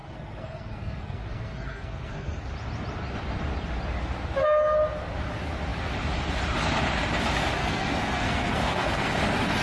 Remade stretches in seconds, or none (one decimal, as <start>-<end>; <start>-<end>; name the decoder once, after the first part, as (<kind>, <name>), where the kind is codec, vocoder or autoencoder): 0.0-2.5 (codec, SNAC); 7.6-9.2